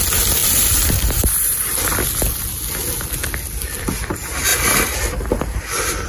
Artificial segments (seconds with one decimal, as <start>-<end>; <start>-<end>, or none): 0.4-2.1; 4.5-6.1